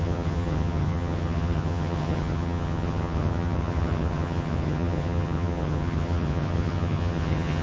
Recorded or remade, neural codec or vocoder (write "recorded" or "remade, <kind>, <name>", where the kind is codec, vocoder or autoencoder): remade, vocoder, HiFi-GAN